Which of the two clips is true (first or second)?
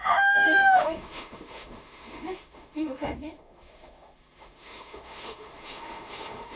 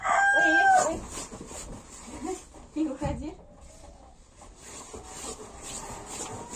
second